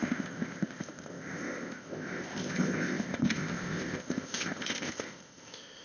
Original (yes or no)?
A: no